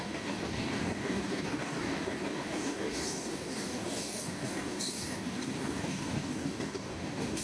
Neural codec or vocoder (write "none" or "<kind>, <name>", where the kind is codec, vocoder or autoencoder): codec, DAC